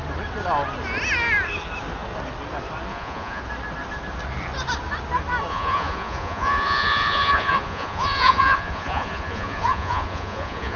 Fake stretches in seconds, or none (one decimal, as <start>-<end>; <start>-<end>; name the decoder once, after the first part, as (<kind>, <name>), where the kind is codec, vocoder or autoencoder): 2.9-3.4 (vocoder, Vocos); 5.5-10.8